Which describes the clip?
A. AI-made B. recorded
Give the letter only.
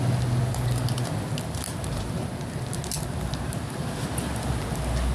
B